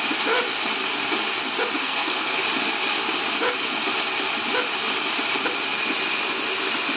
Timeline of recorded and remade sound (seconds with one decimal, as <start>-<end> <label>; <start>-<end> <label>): 0.0-1.8 recorded; 1.8-2.4 remade; 2.4-7.0 recorded